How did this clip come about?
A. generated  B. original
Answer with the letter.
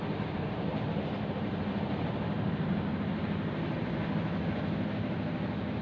B